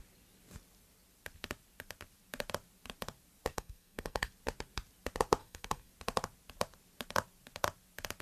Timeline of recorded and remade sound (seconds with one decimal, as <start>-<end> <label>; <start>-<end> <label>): 0.0-3.5 recorded; 3.5-4.3 remade; 4.3-5.4 recorded; 5.4-5.9 remade; 5.9-8.2 recorded